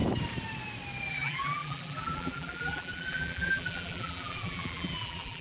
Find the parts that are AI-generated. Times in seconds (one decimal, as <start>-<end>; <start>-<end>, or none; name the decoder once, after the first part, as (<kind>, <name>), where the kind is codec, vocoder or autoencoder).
1.1-5.4 (vocoder, BigVGAN v2)